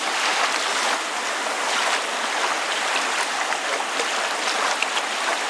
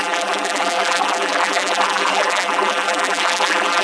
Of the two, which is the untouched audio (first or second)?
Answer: first